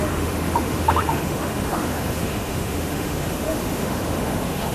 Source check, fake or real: fake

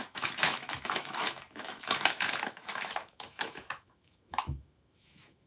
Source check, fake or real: fake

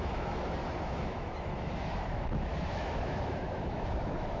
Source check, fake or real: fake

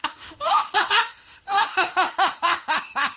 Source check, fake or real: fake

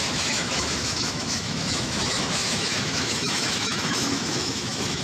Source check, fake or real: fake